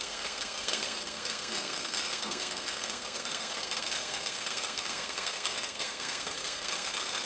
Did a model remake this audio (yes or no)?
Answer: yes